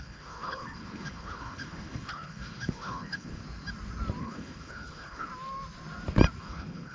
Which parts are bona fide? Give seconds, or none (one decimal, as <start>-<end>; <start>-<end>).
3.4-4.2; 5.3-6.4